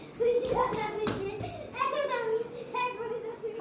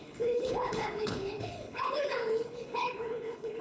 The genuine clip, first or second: first